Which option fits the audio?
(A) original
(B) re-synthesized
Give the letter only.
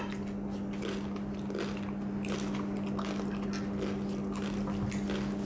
A